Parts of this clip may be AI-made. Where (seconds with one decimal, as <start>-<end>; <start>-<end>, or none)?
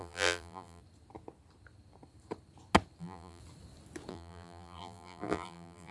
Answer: 0.0-0.8; 3.0-3.4; 4.1-5.9